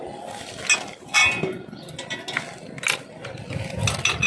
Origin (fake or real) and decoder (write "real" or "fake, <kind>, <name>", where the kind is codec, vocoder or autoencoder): real